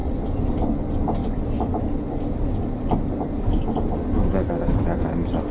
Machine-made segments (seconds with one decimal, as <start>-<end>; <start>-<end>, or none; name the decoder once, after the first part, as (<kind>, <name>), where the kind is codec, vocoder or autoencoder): none